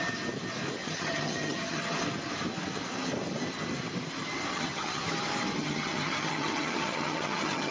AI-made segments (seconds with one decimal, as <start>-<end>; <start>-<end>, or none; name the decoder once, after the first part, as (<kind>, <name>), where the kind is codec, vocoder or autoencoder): 0.8-1.8 (vocoder, HiFi-GAN); 4.5-5.0; 5.6-7.7